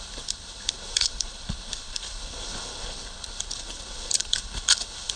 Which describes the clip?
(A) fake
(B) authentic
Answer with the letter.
A